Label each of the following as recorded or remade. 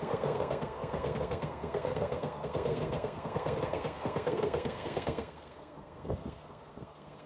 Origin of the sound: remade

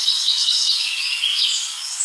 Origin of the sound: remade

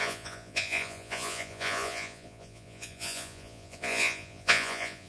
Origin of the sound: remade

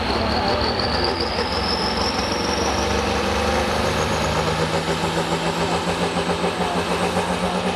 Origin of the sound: recorded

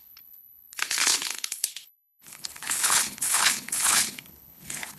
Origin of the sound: remade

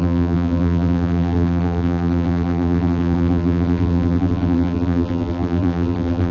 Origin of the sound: remade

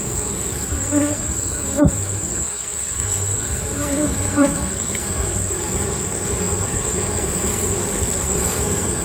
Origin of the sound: remade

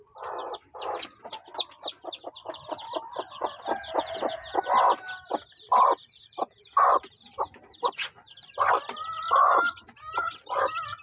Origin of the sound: recorded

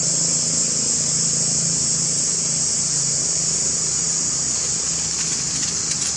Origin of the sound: recorded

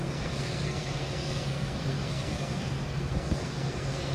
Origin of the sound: remade